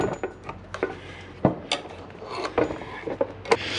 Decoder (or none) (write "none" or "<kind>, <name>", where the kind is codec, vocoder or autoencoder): none